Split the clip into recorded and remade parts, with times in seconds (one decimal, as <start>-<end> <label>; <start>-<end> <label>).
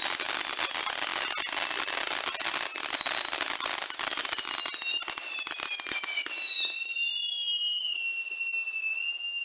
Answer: 0.0-9.4 recorded